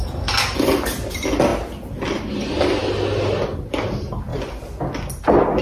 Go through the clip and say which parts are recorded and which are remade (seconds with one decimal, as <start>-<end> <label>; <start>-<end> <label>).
0.0-5.6 recorded